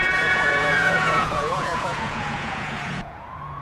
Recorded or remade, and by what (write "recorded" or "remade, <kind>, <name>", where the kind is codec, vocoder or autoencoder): remade, vocoder, Vocos